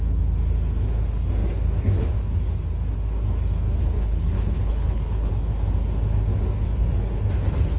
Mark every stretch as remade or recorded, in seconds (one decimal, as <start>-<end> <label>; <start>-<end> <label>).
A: 0.0-3.8 recorded; 3.8-5.3 remade; 5.3-7.8 recorded